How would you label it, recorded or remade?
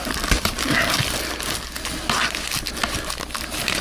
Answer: recorded